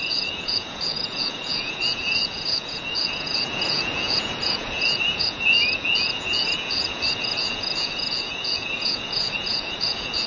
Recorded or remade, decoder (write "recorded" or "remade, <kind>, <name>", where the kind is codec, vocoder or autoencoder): remade, vocoder, Vocos